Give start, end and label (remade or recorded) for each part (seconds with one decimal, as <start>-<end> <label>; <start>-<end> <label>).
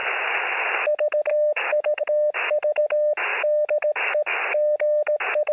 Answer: 0.0-1.3 recorded; 1.3-2.0 remade; 2.0-5.5 recorded